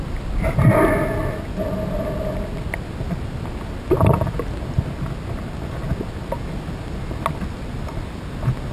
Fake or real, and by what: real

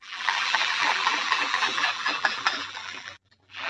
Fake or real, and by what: fake, vocoder, BigVGAN v2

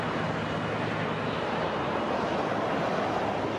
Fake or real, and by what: real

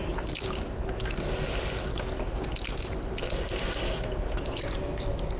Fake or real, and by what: real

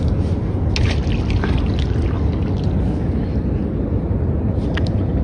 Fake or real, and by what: real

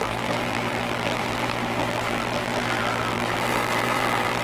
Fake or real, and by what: fake, vocoder, BigVGAN v2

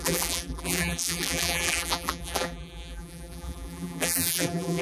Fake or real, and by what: fake, vocoder, BigVGAN v2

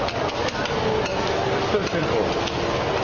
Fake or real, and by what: real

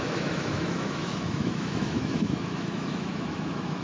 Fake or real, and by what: fake, autoencoder, DAC-VAE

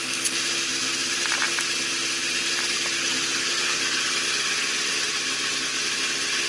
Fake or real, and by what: real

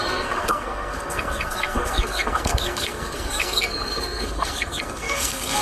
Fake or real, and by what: fake, codec, SNAC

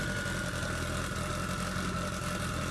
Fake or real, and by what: real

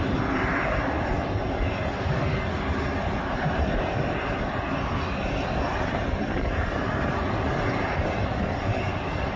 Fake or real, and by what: real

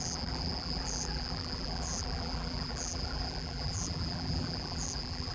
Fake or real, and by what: fake, vocoder, BigVGAN v2